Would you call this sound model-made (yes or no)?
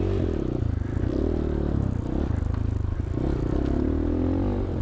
no